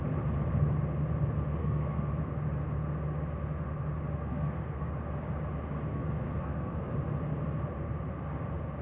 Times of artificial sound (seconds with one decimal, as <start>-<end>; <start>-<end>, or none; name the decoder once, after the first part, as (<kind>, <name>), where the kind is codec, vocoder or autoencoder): 1.6-2.1 (codec, SNAC); 4.3-4.9; 5.9-6.9